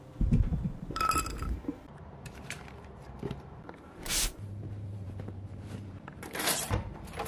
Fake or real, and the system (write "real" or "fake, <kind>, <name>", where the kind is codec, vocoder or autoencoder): fake, vocoder, BigVGAN v2